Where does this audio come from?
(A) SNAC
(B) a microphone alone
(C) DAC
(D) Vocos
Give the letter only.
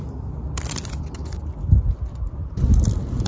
B